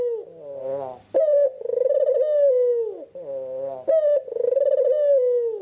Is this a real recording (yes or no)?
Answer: yes